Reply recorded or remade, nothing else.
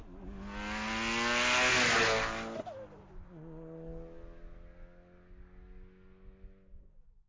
recorded